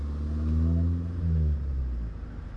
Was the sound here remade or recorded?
recorded